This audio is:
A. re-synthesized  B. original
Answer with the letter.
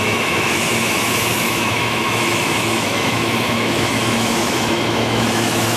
A